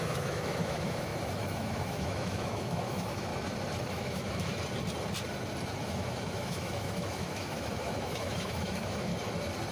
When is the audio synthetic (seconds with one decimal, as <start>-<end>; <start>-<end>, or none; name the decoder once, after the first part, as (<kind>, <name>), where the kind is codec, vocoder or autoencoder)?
0.0-3.3 (autoencoder, DAC-VAE); 3.8-4.5; 5.8-9.1